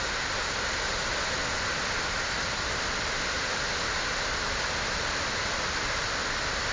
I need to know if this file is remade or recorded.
recorded